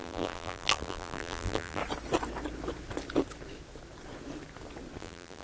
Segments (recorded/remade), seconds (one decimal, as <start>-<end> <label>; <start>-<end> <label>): 0.0-1.8 remade; 1.8-5.0 recorded; 5.0-5.4 remade

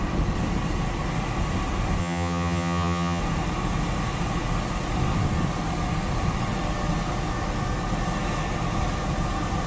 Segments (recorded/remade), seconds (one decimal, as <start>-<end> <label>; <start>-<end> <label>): 0.0-2.0 recorded; 2.0-3.2 remade; 3.2-9.7 recorded

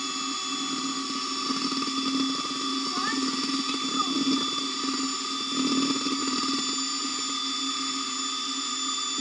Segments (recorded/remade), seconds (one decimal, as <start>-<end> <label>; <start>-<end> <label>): 0.0-9.2 recorded

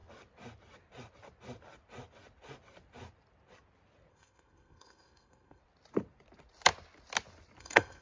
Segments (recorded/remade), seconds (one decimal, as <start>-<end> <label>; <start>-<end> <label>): 0.0-4.1 recorded; 4.1-5.6 remade; 5.6-7.6 recorded; 7.6-8.0 remade

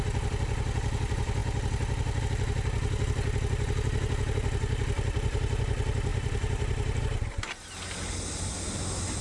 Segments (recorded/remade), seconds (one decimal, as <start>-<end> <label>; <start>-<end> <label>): 0.0-6.1 recorded; 6.1-7.0 remade; 7.0-9.2 recorded

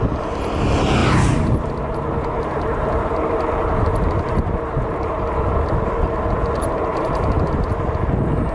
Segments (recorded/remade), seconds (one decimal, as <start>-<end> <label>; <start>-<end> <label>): 0.0-1.0 recorded; 1.0-4.7 remade; 4.7-6.9 recorded; 6.9-7.7 remade; 7.7-8.5 recorded

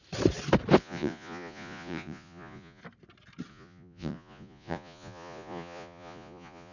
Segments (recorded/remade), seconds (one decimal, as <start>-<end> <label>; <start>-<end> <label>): 0.0-0.8 recorded; 0.8-2.8 remade; 2.8-3.5 recorded; 3.5-6.7 remade

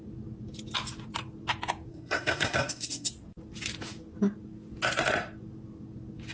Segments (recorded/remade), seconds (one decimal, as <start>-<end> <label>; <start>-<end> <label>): 0.0-1.9 recorded; 1.9-3.1 remade; 3.1-6.3 recorded